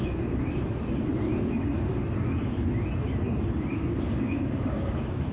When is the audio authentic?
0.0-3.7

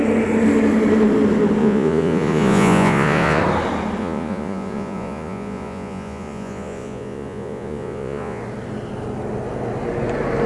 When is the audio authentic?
0.0-1.6; 3.4-4.0; 8.4-10.5

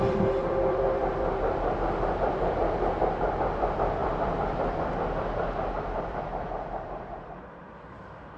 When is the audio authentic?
2.6-3.2

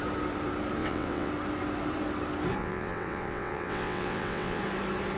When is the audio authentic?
0.0-0.8; 1.3-2.6; 4.6-5.2